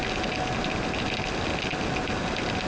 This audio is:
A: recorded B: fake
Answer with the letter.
A